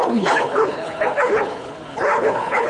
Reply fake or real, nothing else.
fake